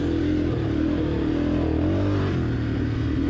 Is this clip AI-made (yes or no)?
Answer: no